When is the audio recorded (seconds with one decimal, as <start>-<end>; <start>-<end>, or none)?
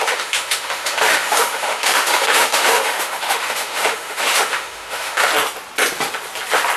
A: 5.3-6.8